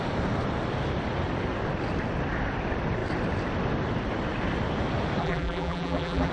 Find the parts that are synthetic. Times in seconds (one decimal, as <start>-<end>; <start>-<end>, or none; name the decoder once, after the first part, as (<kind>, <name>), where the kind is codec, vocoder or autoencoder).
5.2-6.3 (vocoder, BigVGAN v2)